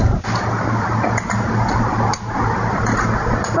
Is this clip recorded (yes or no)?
yes